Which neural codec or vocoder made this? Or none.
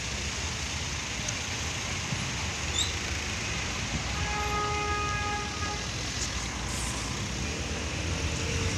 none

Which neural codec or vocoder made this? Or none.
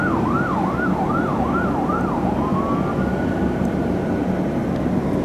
none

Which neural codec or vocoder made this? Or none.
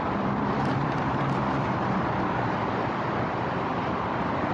vocoder, BigVGAN v2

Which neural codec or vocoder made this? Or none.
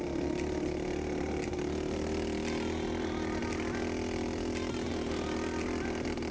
none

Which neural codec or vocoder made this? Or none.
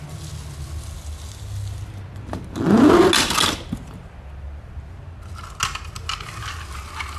none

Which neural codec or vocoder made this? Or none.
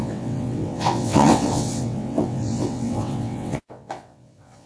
vocoder, WaveNeXt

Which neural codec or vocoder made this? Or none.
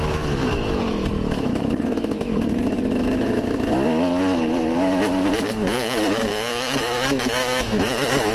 autoencoder, DAC-VAE